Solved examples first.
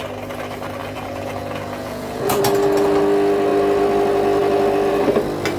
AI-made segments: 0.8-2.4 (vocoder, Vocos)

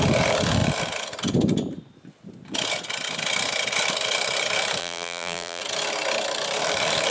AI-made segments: 4.8-5.6 (vocoder, BigVGAN v2)

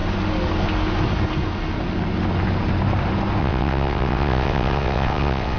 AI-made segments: 3.4-5.6 (vocoder, WaveNeXt)

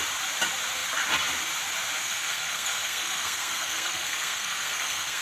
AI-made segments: 2.0-5.2 (codec, SNAC)

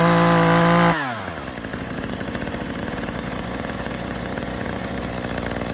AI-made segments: 1.7-5.1 (vocoder, Vocos)

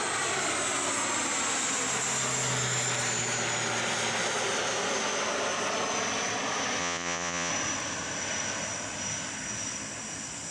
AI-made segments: 6.8-7.5 (vocoder, Vocos)

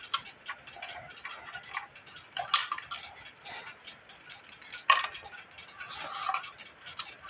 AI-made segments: none